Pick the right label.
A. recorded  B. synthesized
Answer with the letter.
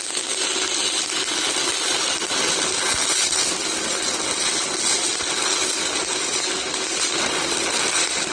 A